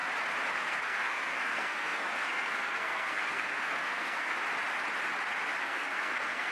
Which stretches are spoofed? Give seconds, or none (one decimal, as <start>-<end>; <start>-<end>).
0.5-4.4; 5.6-6.5